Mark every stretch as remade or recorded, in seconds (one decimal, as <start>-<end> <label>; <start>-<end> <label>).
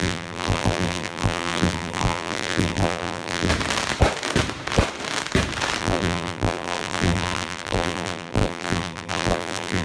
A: 0.0-3.5 remade; 3.5-5.8 recorded; 5.8-9.8 remade